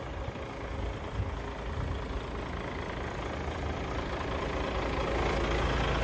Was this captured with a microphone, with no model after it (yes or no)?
yes